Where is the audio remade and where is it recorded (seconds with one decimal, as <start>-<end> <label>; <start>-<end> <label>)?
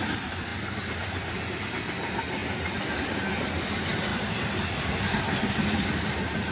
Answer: 0.0-2.4 recorded; 2.4-3.3 remade; 3.3-4.1 recorded; 4.1-5.0 remade; 5.0-6.5 recorded